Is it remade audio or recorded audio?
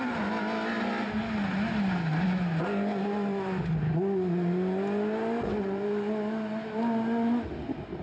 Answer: recorded